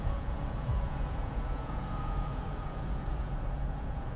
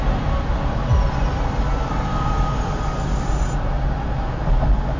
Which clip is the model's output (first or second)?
first